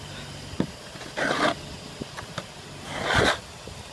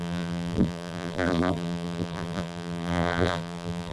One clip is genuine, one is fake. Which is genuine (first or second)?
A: first